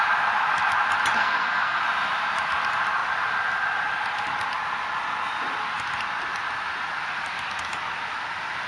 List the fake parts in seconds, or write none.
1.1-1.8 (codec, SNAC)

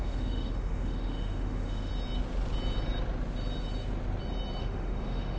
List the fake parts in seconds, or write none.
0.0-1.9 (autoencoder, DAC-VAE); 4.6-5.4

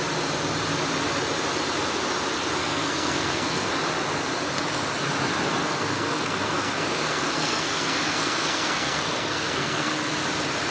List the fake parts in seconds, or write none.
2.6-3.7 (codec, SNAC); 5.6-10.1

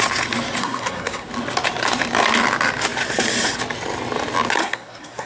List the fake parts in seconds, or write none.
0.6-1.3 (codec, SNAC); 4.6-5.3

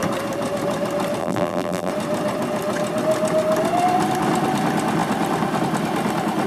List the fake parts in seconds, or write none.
1.2-1.9 (vocoder, BigVGAN v2)